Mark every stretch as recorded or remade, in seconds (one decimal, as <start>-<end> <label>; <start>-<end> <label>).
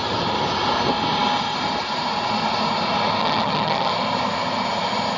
0.0-3.2 recorded; 3.2-3.9 remade; 3.9-5.2 recorded